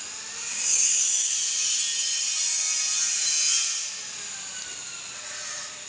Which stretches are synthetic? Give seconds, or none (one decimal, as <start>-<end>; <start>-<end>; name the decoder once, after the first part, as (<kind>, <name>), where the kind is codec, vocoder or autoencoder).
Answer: 0.5-1.3 (codec, DAC)